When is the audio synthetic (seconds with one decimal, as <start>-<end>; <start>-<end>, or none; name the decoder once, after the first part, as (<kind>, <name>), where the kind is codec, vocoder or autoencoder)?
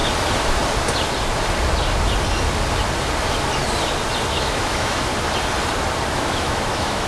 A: 4.3-5.1 (autoencoder, DAC-VAE); 6.1-7.1